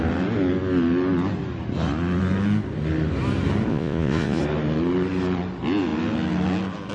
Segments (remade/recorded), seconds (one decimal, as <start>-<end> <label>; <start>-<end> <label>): 0.0-3.7 recorded; 3.7-4.4 remade; 4.4-6.9 recorded